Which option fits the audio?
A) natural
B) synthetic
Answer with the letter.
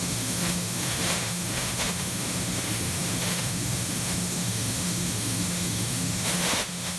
B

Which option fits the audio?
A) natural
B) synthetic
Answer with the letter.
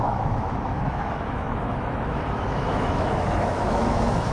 B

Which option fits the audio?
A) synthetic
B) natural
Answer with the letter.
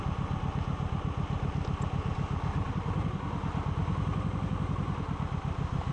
B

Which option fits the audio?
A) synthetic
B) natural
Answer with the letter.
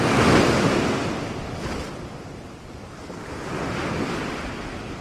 B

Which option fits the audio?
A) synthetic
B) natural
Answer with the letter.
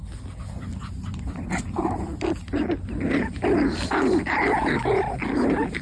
B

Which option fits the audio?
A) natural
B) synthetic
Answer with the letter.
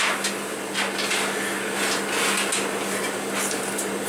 A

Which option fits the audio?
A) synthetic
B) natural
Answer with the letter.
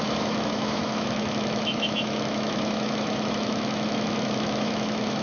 A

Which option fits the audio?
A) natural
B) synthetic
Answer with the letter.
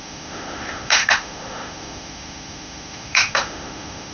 B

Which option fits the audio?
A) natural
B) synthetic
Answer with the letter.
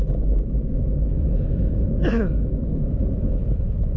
B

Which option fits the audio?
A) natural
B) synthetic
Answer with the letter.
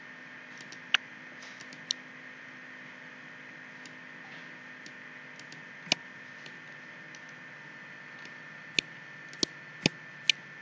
A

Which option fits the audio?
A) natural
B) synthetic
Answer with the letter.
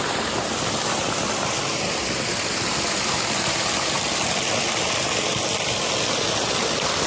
A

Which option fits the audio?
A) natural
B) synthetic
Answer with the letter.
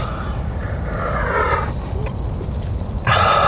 A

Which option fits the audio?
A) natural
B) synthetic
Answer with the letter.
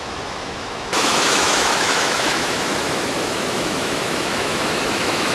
B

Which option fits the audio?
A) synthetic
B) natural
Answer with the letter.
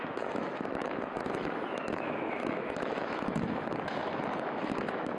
A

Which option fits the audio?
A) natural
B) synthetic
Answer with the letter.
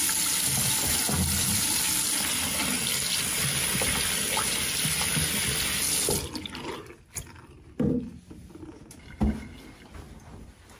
A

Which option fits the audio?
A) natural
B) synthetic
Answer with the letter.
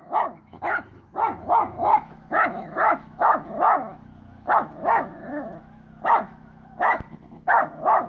B